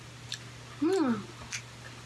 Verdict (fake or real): real